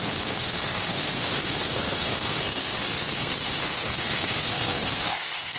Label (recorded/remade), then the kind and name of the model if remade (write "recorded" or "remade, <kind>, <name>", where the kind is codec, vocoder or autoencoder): remade, codec, SNAC